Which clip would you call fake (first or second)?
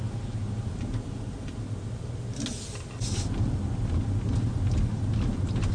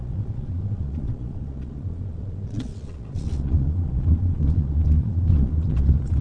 second